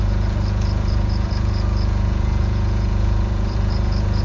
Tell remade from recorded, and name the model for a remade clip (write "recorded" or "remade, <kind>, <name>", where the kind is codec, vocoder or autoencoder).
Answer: remade, vocoder, Vocos